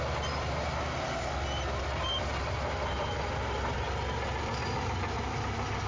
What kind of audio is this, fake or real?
real